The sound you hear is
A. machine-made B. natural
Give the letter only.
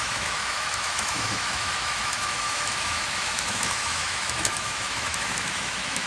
A